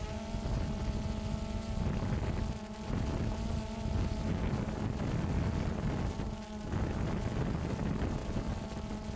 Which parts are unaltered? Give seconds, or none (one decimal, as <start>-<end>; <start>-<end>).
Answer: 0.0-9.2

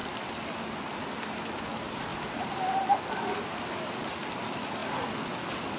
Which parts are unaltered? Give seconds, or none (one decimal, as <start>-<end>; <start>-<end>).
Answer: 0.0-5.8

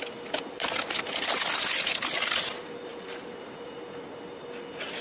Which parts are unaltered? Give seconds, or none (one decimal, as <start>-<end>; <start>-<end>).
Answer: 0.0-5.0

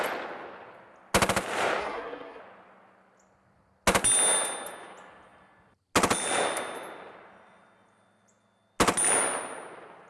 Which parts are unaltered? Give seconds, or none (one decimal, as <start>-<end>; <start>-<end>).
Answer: 0.0-1.8; 2.4-10.1

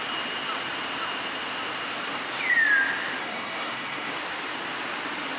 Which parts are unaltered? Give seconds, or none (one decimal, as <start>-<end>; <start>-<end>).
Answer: 0.0-3.2; 4.1-5.4

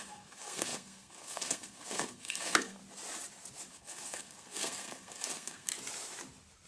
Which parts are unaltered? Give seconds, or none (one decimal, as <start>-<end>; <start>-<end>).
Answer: 2.8-3.7; 5.7-6.7

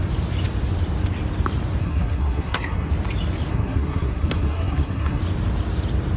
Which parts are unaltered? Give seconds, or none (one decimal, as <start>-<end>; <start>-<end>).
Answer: 0.0-1.8; 2.9-3.5; 5.2-6.2